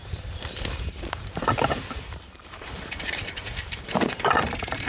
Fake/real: fake